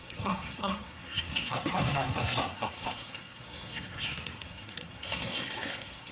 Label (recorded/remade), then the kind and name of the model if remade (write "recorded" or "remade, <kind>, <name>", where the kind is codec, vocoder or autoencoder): remade, codec, SNAC